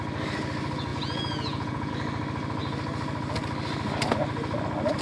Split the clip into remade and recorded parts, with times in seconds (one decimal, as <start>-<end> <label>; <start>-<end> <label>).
0.0-0.9 recorded; 0.9-1.9 remade; 1.9-5.0 recorded